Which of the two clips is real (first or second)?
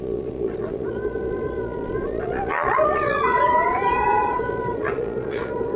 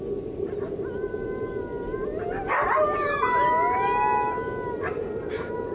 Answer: second